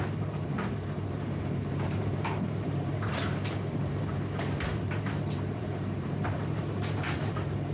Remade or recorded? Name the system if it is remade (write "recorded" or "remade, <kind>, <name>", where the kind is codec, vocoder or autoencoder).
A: remade, vocoder, BigVGAN v2